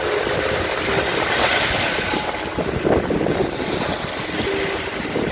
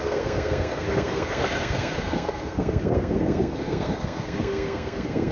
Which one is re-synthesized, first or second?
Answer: second